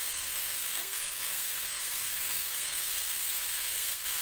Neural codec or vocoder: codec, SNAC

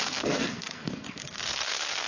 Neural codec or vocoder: codec, SNAC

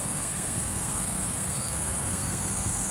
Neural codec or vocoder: codec, SNAC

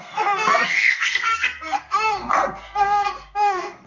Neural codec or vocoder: codec, SNAC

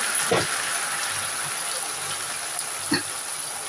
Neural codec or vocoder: none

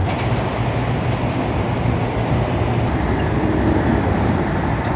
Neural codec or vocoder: none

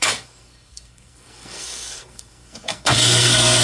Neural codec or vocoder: codec, SNAC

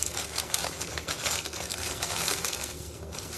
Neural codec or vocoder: codec, SNAC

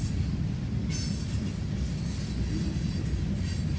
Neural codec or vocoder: none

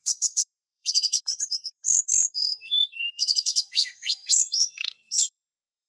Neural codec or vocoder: codec, SNAC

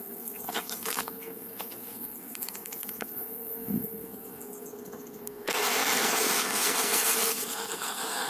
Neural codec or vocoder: codec, SNAC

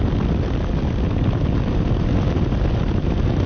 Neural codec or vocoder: none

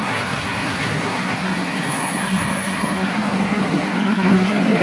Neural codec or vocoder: codec, SNAC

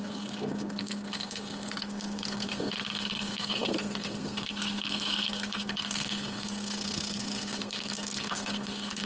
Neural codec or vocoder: codec, SNAC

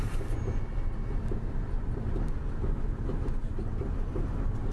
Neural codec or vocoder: none